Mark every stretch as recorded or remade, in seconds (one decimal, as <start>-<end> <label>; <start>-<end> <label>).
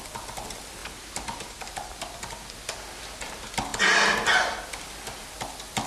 0.0-0.8 recorded; 0.8-2.2 remade; 2.2-5.9 recorded